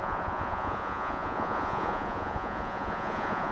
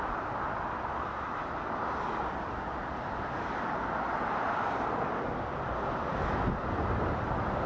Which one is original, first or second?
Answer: second